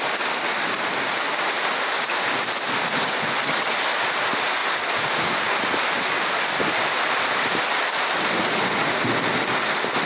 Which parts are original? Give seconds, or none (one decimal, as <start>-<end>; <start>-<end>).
0.0-4.6